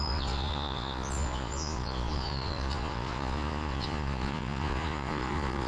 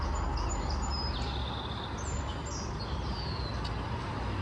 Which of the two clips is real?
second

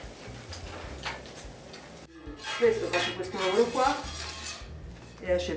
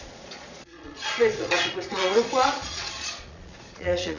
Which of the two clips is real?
first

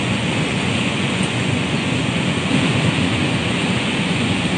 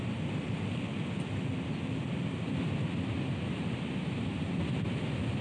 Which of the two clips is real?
second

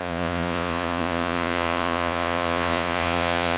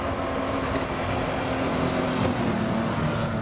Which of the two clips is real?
second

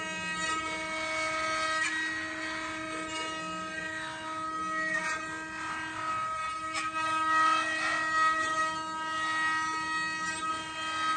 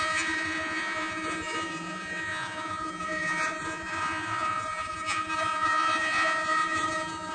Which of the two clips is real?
first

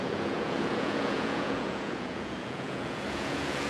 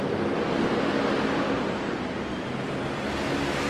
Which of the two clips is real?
second